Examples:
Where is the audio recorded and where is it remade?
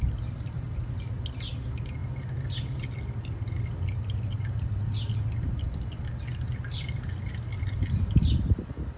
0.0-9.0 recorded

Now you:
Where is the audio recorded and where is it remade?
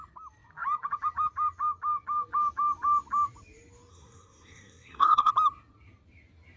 0.0-3.9 recorded; 3.9-5.3 remade; 5.3-6.6 recorded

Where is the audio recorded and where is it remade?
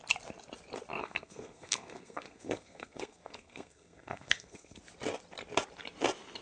0.0-1.0 recorded; 1.0-4.8 remade; 4.8-6.4 recorded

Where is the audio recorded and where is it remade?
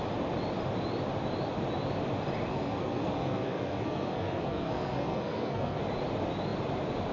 0.0-2.5 recorded; 2.5-5.8 remade; 5.8-7.1 recorded